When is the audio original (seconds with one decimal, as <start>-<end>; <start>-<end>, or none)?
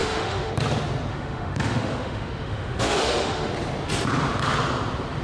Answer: 0.5-1.1; 3.5-5.2